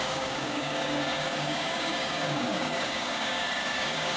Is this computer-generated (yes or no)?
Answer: yes